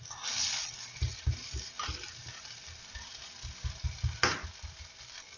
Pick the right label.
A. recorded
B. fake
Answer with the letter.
A